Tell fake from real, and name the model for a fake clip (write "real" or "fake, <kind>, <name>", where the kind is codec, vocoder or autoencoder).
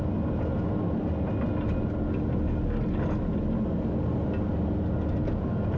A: real